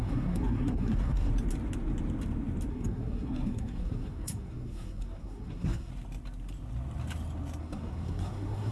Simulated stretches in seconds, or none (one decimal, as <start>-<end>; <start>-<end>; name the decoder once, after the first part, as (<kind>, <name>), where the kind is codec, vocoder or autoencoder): 0.0-1.3 (codec, SNAC); 2.7-5.9; 7.6-8.7